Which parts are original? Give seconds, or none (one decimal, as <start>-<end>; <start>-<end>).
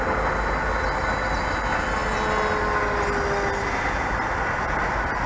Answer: 0.0-5.3